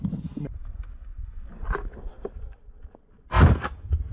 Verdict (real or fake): real